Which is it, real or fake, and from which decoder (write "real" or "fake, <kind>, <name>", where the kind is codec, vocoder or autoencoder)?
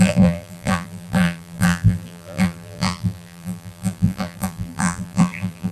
fake, vocoder, BigVGAN v2